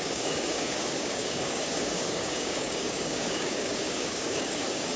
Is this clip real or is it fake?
fake